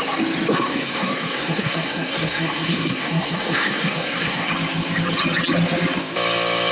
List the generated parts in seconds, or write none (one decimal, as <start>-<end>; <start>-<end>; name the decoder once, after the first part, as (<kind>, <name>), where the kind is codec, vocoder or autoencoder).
0.5-4.5 (codec, SNAC)